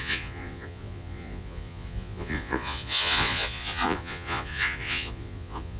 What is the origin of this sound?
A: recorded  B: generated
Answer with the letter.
B